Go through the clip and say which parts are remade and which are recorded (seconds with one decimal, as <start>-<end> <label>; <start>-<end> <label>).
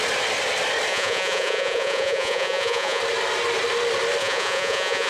0.0-0.9 recorded; 0.9-3.0 remade; 3.0-4.2 recorded; 4.2-5.1 remade